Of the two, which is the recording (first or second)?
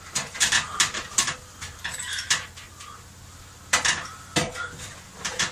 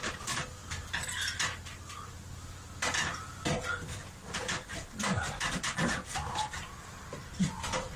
first